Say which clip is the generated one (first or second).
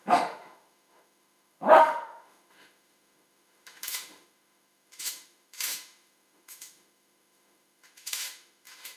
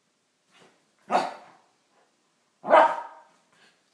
first